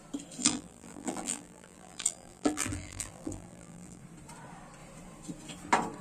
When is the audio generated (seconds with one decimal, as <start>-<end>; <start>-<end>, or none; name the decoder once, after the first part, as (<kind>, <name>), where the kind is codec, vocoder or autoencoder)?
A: 0.4-4.0 (vocoder, BigVGAN v2)